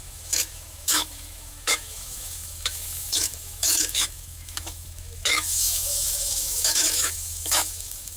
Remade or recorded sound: remade